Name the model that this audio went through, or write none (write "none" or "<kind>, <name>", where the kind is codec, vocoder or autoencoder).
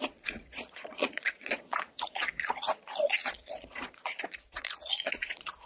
vocoder, Vocos